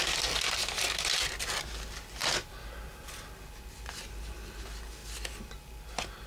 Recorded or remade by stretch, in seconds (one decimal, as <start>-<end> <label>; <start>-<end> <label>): 0.0-6.3 recorded